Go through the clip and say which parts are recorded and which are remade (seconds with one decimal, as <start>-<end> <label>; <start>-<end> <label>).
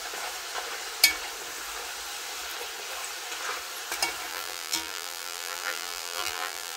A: 0.0-4.3 recorded; 4.3-6.8 remade